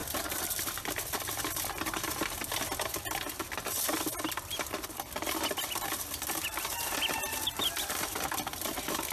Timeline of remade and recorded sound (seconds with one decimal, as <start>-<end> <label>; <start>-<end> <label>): 0.0-9.1 recorded